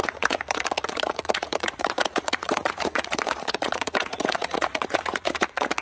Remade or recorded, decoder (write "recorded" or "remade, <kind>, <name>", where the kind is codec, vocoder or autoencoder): remade, vocoder, Vocos